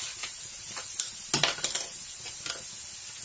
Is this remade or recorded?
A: recorded